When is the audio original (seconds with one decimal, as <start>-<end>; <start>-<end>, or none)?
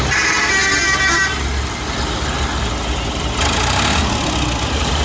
0.0-5.0